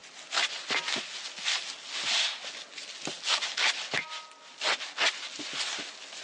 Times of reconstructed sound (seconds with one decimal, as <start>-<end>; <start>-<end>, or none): none